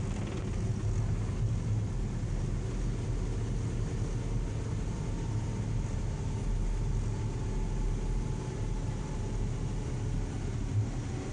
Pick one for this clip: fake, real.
real